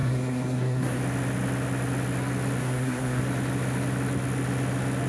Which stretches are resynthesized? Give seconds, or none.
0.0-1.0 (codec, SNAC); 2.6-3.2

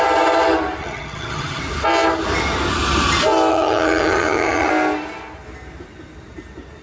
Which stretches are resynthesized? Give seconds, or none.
0.8-1.6 (vocoder, HiFi-GAN); 3.5-4.7

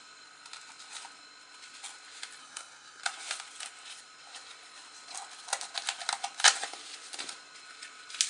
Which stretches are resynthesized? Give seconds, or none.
2.4-3.0 (codec, SNAC)

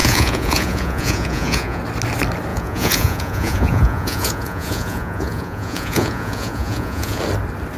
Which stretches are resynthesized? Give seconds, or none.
0.0-1.8 (vocoder, Vocos); 2.5-7.2